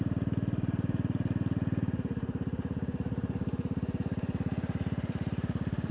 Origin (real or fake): fake